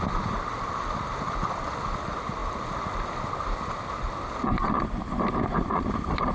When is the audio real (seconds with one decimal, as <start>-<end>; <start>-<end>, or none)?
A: 0.0-6.3